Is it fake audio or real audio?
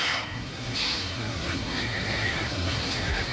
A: fake